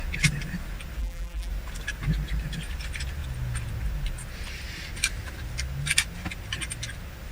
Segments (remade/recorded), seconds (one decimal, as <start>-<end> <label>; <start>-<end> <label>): 0.0-1.0 recorded; 1.0-1.5 remade; 1.5-7.3 recorded